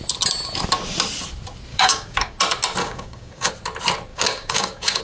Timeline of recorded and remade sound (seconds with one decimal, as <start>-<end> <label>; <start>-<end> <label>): 0.0-1.7 recorded; 1.7-2.4 remade; 2.4-2.8 recorded; 2.8-3.5 remade; 3.5-4.1 recorded; 4.1-5.0 remade